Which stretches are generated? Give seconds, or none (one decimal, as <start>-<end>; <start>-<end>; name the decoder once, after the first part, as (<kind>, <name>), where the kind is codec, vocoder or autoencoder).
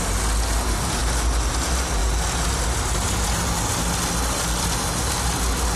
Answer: none